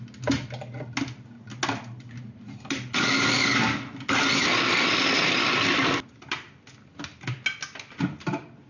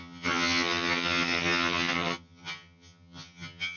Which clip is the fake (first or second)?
second